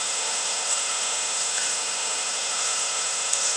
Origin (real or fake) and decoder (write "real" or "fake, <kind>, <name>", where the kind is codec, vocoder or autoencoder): fake, autoencoder, DAC-VAE